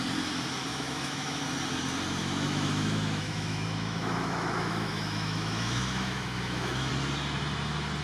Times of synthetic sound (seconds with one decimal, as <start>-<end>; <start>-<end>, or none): 0.7-1.4; 2.2-6.9